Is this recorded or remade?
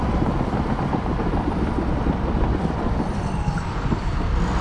recorded